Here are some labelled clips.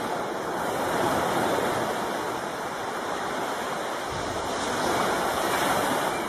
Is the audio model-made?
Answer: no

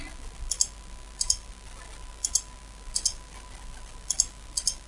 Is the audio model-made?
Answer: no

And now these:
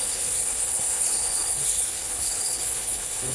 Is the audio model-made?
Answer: yes